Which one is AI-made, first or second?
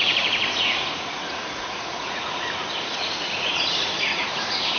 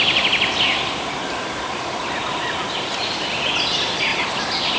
first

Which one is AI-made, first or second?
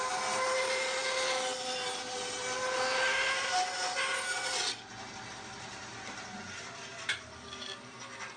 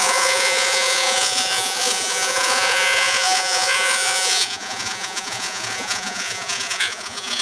second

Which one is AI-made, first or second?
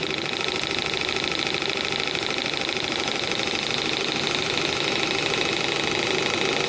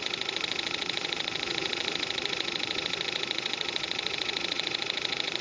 second